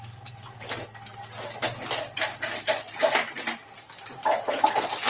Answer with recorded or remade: recorded